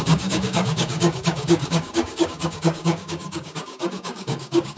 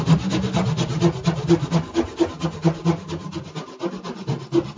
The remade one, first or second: first